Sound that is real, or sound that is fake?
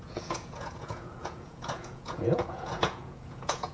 fake